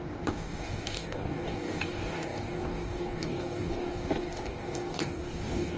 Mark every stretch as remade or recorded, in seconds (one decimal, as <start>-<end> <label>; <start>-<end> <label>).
0.0-5.8 remade